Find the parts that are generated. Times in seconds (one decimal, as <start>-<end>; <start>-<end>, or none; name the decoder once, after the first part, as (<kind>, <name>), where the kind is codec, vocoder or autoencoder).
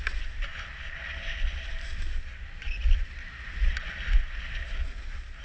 none